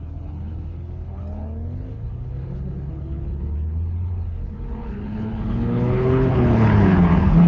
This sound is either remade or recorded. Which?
remade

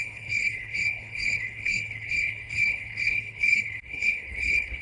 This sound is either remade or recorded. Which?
remade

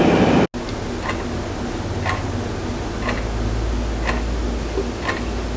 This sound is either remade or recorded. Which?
recorded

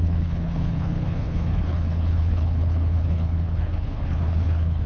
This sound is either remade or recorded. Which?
remade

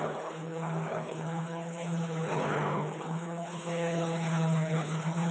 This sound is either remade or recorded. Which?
remade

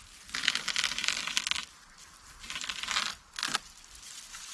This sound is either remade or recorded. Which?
recorded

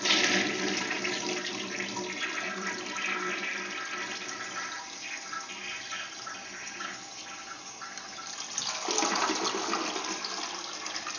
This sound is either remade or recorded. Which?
recorded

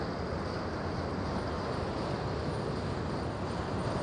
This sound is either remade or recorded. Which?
recorded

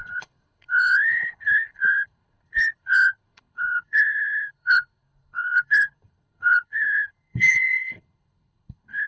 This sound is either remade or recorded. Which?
remade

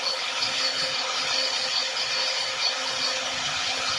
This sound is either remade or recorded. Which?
remade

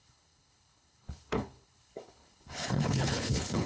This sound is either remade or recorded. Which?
remade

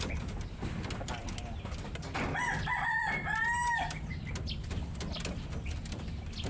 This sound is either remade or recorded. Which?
recorded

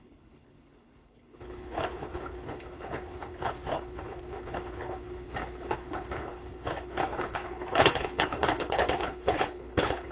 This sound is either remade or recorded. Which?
remade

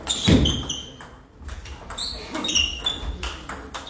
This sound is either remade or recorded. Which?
recorded